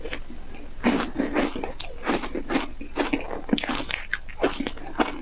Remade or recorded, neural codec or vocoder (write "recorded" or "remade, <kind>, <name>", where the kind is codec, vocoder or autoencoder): recorded